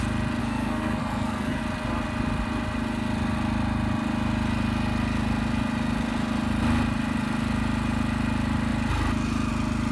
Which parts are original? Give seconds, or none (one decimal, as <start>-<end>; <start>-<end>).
0.0-0.4; 1.6-9.9